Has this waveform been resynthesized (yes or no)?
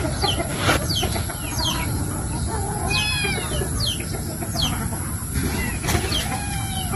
no